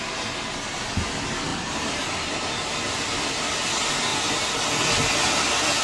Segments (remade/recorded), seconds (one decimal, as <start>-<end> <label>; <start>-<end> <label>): 0.0-5.8 recorded